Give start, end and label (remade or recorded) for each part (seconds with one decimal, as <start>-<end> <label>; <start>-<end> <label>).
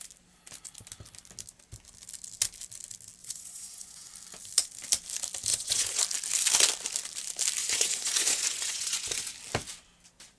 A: 0.0-3.2 recorded; 3.2-4.1 remade; 4.1-5.5 recorded; 5.5-6.0 remade; 6.0-7.6 recorded; 7.6-9.3 remade; 9.3-10.4 recorded